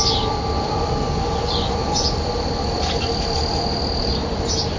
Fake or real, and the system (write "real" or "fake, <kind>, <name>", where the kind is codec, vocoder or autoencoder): real